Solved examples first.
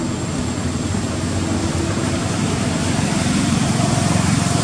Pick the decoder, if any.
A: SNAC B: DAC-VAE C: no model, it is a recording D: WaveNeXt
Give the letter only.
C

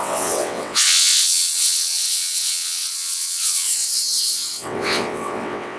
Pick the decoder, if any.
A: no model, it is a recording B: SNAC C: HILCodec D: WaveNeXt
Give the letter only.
D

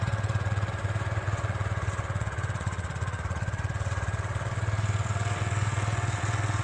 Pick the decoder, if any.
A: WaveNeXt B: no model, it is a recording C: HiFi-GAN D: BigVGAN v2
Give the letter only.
A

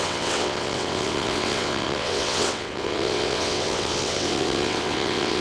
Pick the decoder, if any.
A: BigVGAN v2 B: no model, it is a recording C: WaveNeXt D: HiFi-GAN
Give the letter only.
C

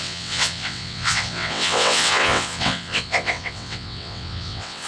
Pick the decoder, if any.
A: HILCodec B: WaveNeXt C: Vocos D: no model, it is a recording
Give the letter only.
B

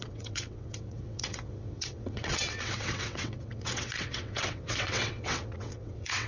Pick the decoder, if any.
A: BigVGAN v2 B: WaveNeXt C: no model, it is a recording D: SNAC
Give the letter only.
B